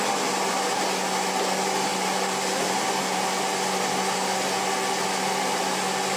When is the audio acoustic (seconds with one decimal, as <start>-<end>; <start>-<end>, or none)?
0.0-6.2

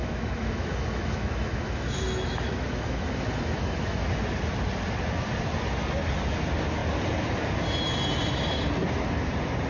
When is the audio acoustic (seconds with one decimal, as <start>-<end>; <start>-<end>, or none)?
4.0-9.7